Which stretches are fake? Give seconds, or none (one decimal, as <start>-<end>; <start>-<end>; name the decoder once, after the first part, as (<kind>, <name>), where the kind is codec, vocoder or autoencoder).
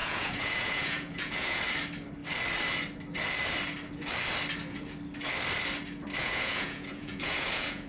0.0-1.6 (vocoder, Vocos); 6.2-7.9